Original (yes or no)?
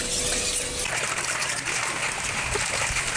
yes